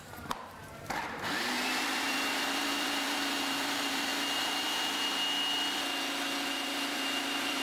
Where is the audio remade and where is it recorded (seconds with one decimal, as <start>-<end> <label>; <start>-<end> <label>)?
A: 0.0-4.1 remade; 4.1-6.5 recorded; 6.5-7.6 remade